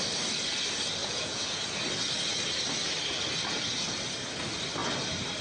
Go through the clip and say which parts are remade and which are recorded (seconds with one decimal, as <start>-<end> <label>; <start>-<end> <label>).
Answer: 0.0-1.0 recorded; 1.0-1.6 remade; 1.6-5.4 recorded